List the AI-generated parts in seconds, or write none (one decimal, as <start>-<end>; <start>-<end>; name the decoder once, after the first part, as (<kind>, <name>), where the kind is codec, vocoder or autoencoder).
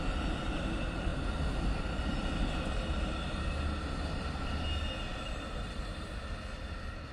none